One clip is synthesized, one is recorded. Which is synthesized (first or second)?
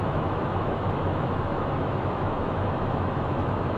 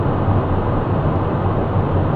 first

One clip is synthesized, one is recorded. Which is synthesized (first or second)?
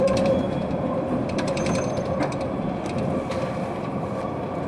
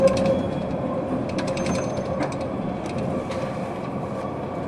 first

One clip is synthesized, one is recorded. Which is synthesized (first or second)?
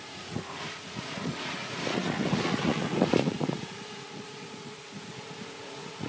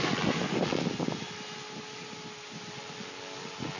first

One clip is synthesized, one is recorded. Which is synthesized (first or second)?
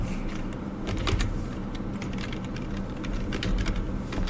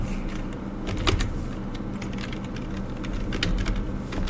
first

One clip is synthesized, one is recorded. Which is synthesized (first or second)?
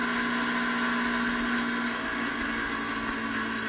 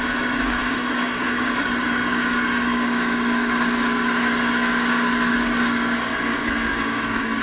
second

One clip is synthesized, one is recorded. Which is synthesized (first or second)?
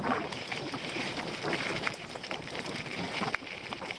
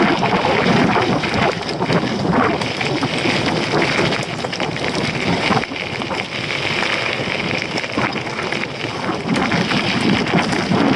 first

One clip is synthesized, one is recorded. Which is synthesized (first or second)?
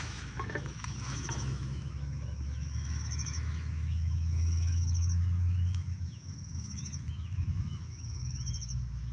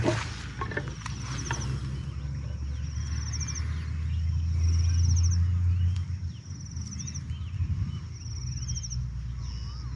first